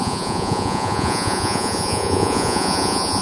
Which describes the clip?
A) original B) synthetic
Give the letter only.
B